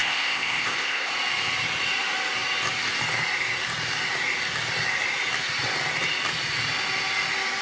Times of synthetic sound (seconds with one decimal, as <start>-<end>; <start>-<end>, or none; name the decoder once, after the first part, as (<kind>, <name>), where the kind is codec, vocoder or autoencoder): 0.0-1.1 (codec, ZipCodec)